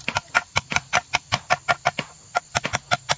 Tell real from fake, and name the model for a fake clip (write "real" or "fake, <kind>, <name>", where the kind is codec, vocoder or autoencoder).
real